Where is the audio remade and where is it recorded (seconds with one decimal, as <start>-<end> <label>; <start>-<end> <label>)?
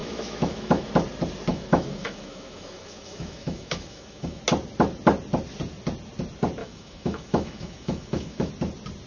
0.0-0.9 remade; 0.9-1.5 recorded; 1.5-4.4 remade; 4.4-6.6 recorded; 6.6-8.5 remade; 8.5-9.1 recorded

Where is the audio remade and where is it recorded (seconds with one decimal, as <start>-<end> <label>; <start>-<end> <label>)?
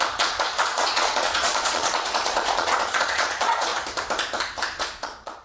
0.0-3.7 remade; 3.7-4.8 recorded; 4.8-5.4 remade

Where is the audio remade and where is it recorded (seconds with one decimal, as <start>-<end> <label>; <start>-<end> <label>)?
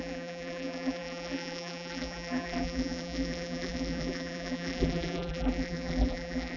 0.0-6.6 remade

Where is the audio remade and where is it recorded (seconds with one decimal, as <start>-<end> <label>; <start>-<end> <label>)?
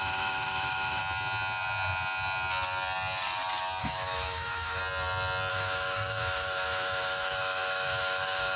0.0-1.0 remade; 1.0-3.8 recorded; 3.8-4.8 remade; 4.8-5.5 recorded; 5.5-8.6 remade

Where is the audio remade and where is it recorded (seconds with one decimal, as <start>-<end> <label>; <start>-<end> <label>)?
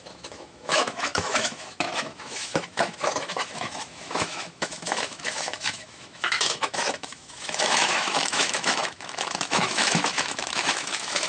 0.0-11.3 remade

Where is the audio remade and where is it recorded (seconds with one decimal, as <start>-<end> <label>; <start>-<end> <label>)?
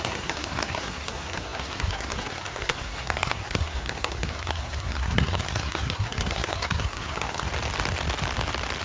0.0-7.5 remade; 7.5-8.8 recorded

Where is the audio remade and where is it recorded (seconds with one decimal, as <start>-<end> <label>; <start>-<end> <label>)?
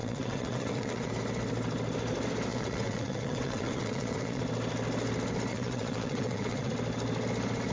0.0-1.1 remade; 1.1-2.5 recorded; 2.5-4.4 remade; 4.4-5.5 recorded; 5.5-6.7 remade; 6.7-7.7 recorded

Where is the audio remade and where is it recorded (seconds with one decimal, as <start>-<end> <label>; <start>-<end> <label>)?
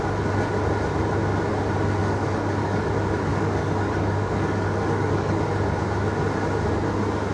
0.0-2.0 recorded; 2.0-2.9 remade; 2.9-3.3 recorded; 3.3-5.4 remade; 5.4-7.3 recorded